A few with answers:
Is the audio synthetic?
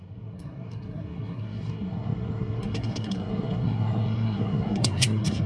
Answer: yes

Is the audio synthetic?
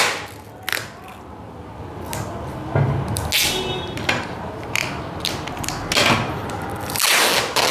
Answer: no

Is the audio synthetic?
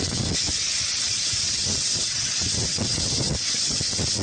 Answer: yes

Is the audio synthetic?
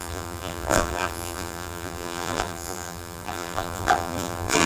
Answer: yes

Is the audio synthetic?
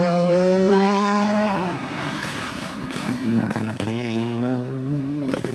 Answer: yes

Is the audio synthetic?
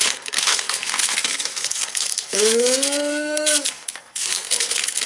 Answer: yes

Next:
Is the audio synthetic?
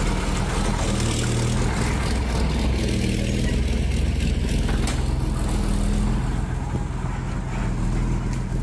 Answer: no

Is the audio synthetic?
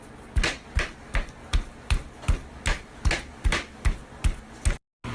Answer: no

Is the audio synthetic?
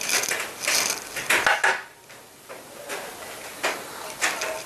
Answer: no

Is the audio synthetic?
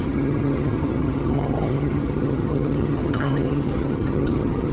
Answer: yes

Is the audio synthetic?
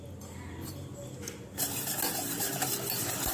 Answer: no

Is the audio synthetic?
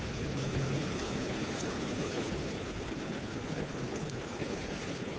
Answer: yes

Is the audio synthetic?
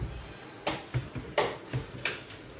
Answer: no